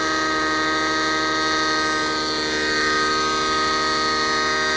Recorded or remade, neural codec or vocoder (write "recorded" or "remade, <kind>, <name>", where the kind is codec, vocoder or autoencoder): recorded